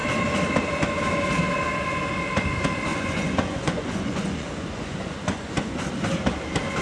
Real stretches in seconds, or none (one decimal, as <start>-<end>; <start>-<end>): 0.0-2.9; 5.9-6.8